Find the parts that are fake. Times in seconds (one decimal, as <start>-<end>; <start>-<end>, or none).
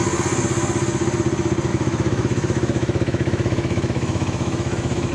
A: 1.7-5.1